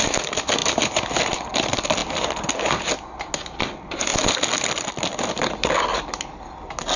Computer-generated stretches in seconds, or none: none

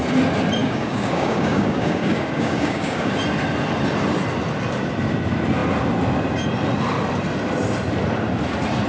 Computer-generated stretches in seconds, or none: 0.6-3.1 (codec, DAC)

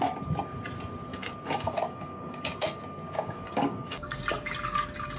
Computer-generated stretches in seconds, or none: 1.1-4.2 (codec, DAC)

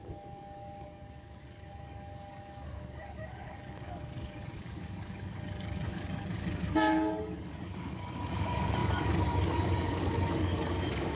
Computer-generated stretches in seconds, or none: 0.0-11.2 (codec, DAC)

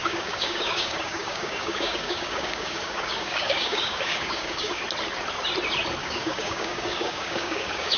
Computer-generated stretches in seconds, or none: 0.0-4.8 (codec, DAC); 6.0-8.0

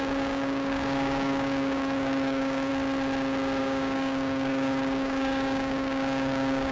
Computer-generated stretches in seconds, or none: 0.0-2.7 (codec, DAC); 3.6-6.7

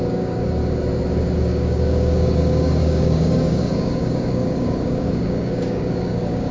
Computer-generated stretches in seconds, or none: 0.0-0.6 (codec, DAC); 1.4-6.5

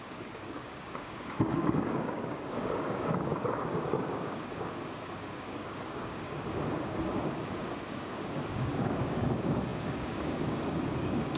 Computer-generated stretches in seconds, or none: 0.0-11.4 (codec, DAC)